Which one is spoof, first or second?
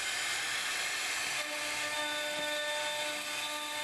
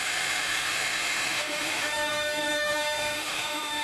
second